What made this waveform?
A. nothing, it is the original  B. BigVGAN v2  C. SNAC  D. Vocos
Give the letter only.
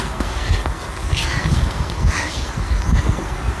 C